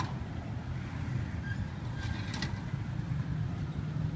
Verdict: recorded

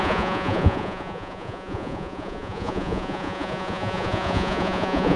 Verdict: remade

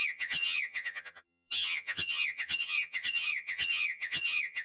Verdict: remade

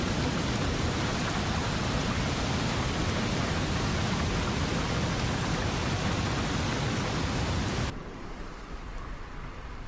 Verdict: recorded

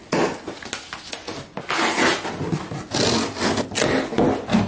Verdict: recorded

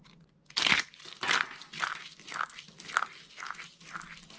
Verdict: recorded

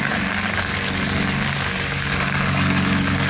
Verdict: remade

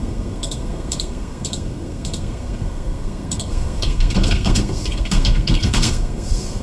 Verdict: remade